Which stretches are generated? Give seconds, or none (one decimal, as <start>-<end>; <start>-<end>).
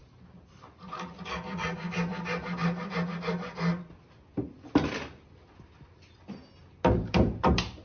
6.6-7.8